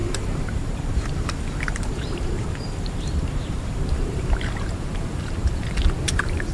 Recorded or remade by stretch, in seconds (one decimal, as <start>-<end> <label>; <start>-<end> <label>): 0.0-5.4 remade; 5.4-6.0 recorded; 6.0-6.5 remade